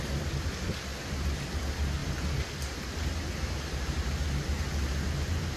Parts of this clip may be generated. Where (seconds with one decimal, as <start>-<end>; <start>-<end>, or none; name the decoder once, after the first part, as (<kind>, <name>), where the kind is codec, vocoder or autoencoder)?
0.0-5.6 (vocoder, BigVGAN v2)